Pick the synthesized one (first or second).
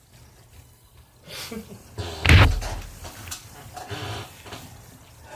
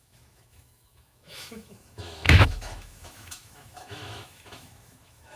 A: second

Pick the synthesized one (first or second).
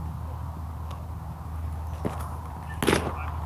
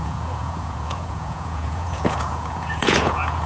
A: second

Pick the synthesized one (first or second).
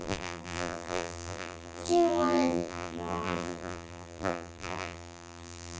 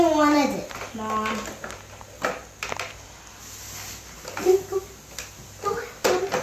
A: first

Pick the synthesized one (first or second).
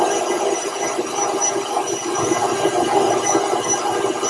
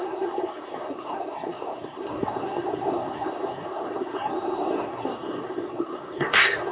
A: second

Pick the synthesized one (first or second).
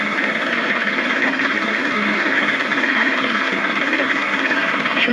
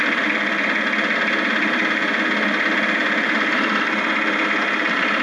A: first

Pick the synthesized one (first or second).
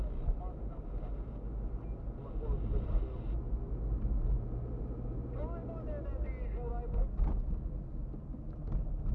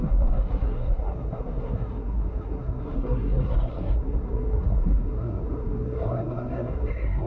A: second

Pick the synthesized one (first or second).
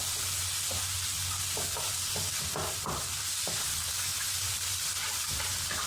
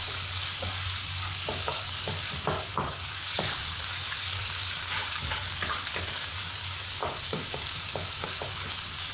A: second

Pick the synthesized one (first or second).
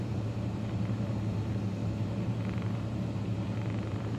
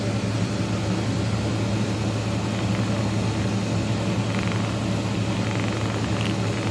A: first